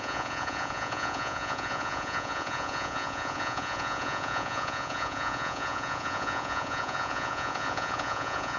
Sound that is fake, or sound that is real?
fake